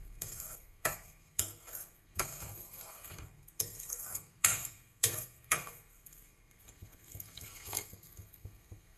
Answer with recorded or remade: remade